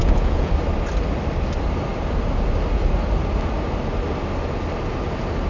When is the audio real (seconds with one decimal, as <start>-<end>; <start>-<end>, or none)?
0.5-5.5